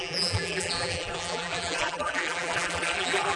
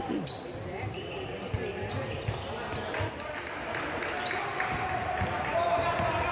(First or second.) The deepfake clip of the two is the first